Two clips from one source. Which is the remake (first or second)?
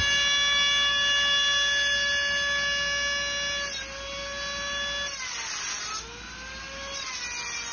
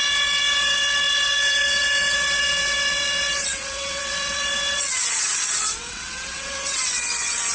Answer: second